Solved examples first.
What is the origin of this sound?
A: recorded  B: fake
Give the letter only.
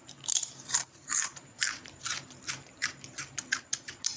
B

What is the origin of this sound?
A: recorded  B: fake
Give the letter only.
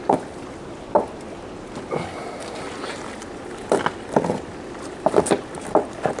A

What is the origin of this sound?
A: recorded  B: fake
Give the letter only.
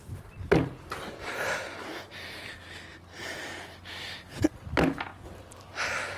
A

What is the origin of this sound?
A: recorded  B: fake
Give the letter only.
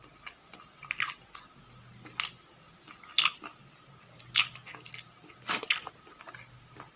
A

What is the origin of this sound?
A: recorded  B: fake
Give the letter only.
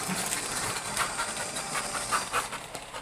B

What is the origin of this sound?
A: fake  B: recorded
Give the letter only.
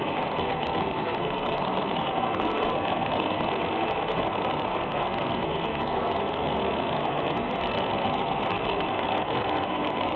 A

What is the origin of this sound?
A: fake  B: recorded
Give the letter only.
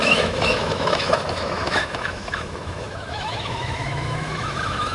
A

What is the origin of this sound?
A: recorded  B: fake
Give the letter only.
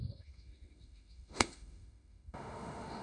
B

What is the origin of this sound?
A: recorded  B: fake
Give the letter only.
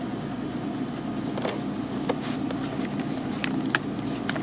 A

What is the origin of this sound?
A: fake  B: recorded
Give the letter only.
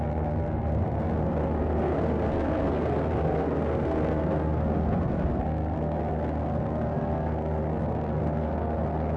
A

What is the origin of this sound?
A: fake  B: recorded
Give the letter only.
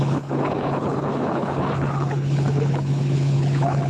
A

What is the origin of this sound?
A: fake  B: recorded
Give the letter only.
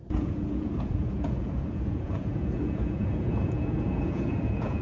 A